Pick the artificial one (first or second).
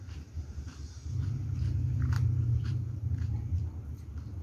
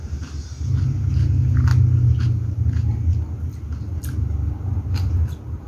first